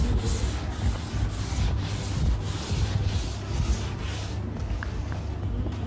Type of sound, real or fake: real